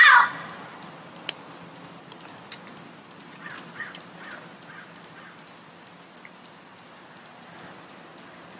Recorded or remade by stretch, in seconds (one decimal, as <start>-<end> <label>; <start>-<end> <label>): 0.0-8.6 recorded